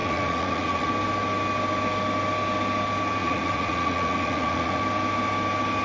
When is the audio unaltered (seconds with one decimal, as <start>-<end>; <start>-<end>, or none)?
0.9-3.2; 4.8-5.8